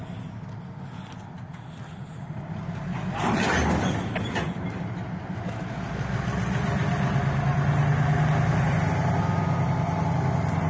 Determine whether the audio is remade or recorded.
recorded